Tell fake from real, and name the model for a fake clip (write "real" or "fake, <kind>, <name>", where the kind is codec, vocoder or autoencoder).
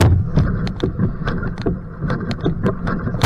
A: real